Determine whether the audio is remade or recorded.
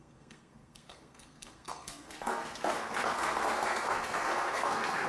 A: remade